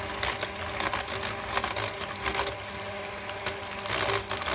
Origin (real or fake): real